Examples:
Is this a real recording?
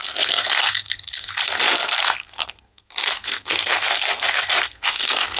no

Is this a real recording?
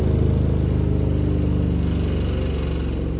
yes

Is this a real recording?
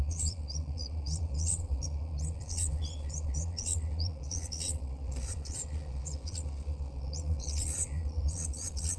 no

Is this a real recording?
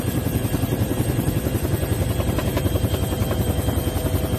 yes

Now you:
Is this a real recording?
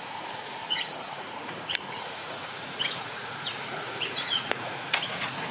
no